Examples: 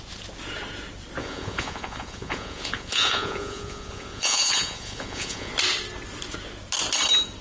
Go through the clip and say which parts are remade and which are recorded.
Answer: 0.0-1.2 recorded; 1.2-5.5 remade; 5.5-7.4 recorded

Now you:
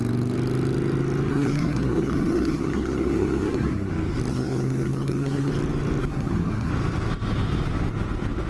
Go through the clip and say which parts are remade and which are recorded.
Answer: 0.0-1.3 recorded; 1.3-3.9 remade; 3.9-4.3 recorded; 4.3-5.5 remade; 5.5-6.0 recorded; 6.0-6.7 remade; 6.7-8.5 recorded

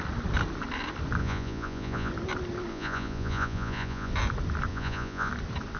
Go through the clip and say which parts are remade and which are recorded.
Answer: 0.0-1.2 recorded; 1.2-2.1 remade; 2.1-2.7 recorded; 2.7-4.1 remade; 4.1-4.7 recorded; 4.7-5.3 remade; 5.3-5.8 recorded

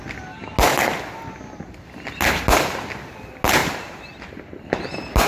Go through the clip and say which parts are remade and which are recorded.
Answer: 0.0-3.6 recorded; 3.6-4.2 remade; 4.2-5.3 recorded

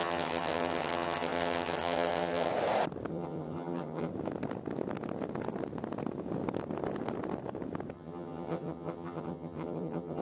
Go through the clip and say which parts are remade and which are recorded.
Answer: 0.0-2.5 remade; 2.5-3.1 recorded; 3.1-4.1 remade; 4.1-7.9 recorded; 7.9-10.2 remade

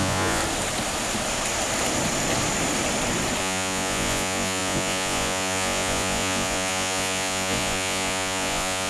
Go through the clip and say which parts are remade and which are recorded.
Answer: 0.0-0.4 remade; 0.4-3.4 recorded; 3.4-8.9 remade

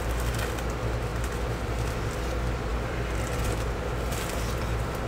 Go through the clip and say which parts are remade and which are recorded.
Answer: 0.0-1.1 recorded; 1.1-1.9 remade; 1.9-2.7 recorded; 2.7-5.1 remade